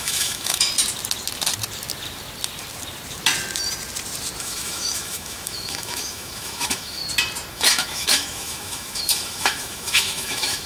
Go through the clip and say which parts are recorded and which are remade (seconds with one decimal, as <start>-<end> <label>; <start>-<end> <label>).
0.0-0.7 remade; 0.7-4.4 recorded; 4.4-7.0 remade; 7.0-7.5 recorded; 7.5-10.7 remade